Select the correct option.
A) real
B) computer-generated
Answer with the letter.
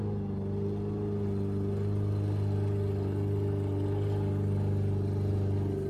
A